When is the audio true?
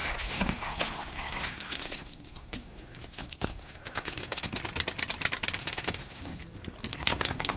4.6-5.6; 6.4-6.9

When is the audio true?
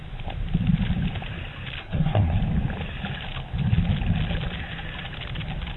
0.0-1.8; 2.4-5.8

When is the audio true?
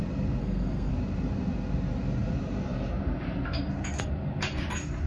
0.0-0.4; 0.9-5.1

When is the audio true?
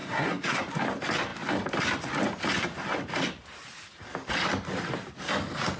0.6-5.8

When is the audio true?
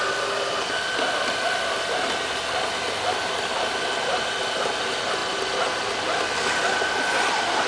0.0-7.7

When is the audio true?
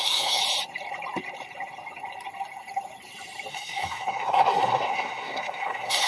0.4-3.5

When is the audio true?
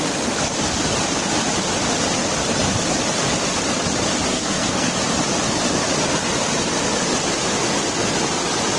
0.0-4.3; 4.9-8.8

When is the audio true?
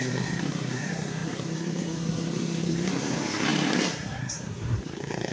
none